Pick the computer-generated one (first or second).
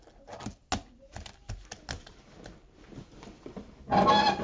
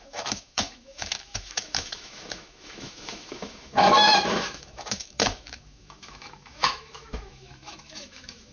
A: second